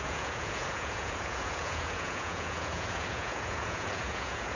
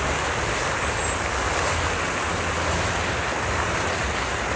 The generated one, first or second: first